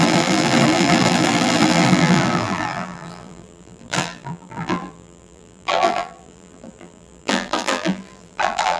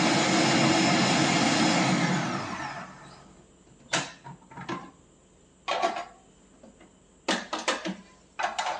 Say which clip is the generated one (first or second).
first